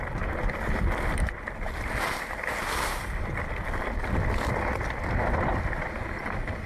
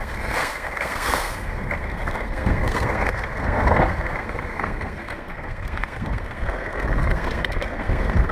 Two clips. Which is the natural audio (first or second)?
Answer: first